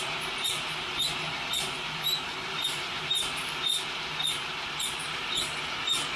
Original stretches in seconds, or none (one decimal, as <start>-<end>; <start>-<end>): 3.4-5.0